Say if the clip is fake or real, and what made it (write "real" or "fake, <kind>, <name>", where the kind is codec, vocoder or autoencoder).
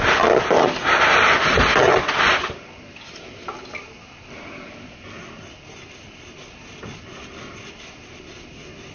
real